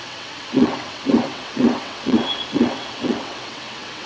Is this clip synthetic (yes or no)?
yes